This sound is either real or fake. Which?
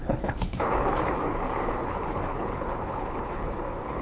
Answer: fake